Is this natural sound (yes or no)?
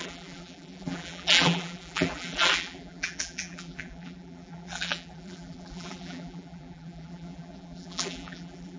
no